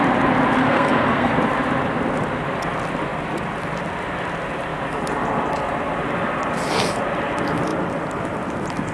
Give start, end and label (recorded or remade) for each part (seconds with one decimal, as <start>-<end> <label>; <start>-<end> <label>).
0.0-0.6 recorded; 0.6-1.3 remade; 1.3-8.9 recorded